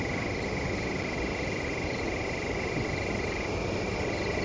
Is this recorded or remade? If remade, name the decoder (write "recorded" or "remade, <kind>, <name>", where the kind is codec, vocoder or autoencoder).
recorded